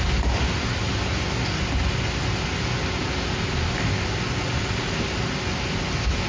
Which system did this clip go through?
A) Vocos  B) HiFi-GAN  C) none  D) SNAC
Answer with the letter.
C